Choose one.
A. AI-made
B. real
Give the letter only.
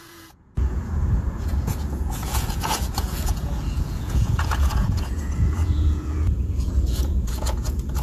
A